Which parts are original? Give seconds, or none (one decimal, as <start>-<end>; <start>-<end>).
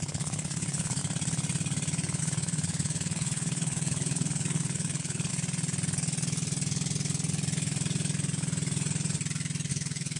1.0-2.2; 5.3-9.7